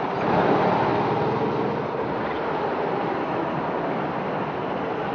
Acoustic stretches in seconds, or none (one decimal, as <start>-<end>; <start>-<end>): 0.0-5.1